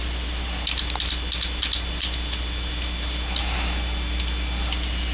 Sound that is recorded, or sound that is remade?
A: recorded